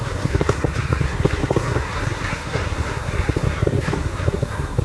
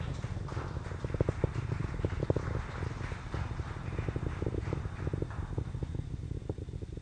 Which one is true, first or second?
second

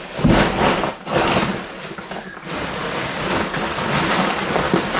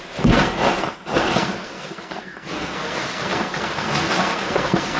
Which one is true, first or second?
first